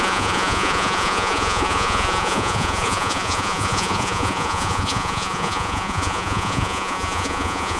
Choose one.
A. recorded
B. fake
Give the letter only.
B